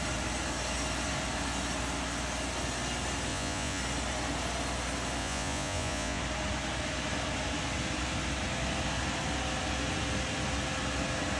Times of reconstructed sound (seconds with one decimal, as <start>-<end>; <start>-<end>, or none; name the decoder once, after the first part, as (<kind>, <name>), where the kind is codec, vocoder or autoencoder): 3.3-3.8 (vocoder, Vocos); 5.2-6.2